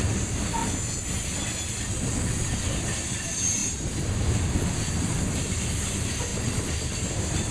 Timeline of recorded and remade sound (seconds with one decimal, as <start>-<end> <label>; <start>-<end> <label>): 0.0-0.6 remade; 0.6-1.7 recorded; 1.7-3.6 remade; 3.6-5.2 recorded; 5.2-6.3 remade; 6.3-7.1 recorded; 7.1-7.5 remade